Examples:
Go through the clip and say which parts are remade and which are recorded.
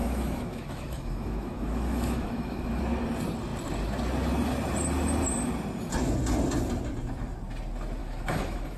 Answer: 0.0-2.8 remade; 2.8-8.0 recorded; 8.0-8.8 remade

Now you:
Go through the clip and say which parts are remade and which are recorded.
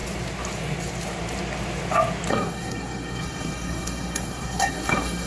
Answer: 0.0-2.3 recorded; 2.3-5.3 remade